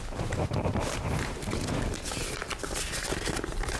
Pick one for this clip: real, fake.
fake